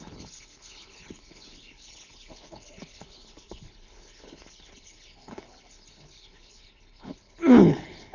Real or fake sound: fake